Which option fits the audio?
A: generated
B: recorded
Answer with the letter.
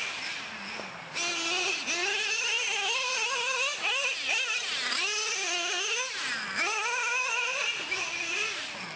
B